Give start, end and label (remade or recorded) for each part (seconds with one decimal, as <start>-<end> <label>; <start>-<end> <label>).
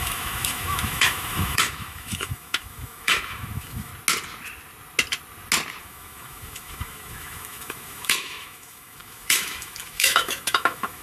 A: 0.0-3.9 remade; 3.9-5.8 recorded; 5.8-11.0 remade